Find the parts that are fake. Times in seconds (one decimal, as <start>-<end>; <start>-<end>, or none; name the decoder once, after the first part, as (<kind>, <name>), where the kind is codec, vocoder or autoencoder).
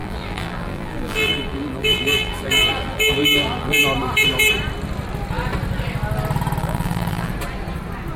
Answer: 0.0-3.8 (vocoder, BigVGAN v2); 6.6-7.3